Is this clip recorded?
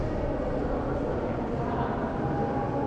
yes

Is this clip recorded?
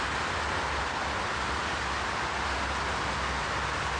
yes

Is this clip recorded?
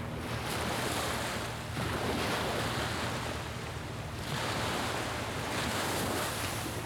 yes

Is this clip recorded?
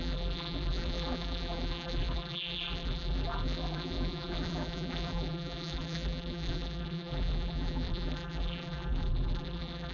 no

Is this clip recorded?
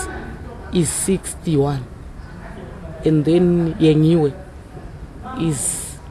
yes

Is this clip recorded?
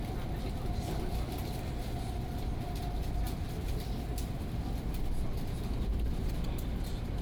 yes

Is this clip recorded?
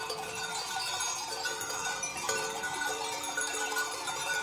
no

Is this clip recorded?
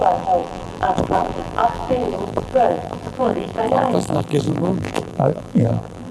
no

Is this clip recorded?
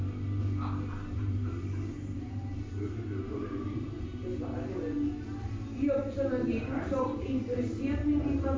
no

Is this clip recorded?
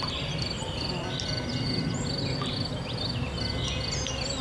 yes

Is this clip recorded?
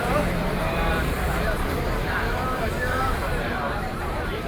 no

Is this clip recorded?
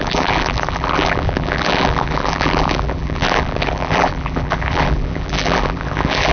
no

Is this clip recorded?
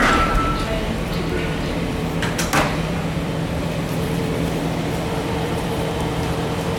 no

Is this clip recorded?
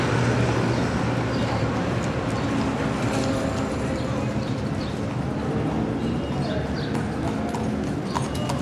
yes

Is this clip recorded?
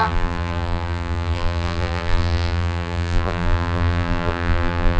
no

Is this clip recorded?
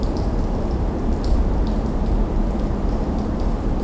yes